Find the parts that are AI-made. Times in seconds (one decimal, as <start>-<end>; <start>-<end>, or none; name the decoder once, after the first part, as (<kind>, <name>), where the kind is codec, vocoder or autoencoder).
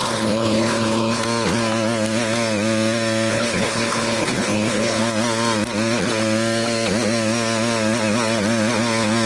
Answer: 0.0-1.2 (codec, HILCodec); 3.3-5.0